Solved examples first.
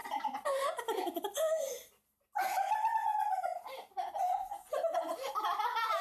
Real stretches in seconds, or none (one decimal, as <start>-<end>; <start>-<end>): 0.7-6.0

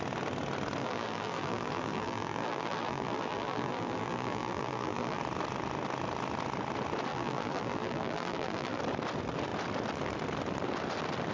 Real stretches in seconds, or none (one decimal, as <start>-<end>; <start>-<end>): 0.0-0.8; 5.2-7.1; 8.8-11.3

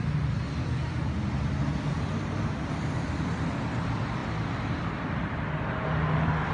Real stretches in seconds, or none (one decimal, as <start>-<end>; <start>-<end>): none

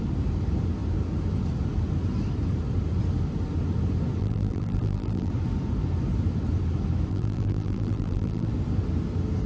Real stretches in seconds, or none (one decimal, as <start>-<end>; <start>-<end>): 0.0-4.2; 5.3-7.1; 8.5-9.5

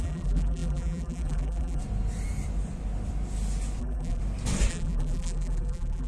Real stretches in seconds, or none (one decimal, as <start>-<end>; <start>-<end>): 1.8-3.8; 4.2-4.7

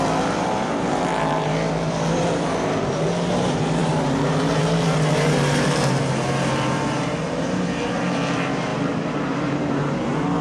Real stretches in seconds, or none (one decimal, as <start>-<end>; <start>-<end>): none